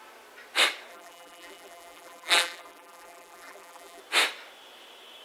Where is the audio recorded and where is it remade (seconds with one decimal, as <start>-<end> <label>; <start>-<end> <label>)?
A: 0.0-0.9 recorded; 0.9-4.0 remade; 4.0-5.2 recorded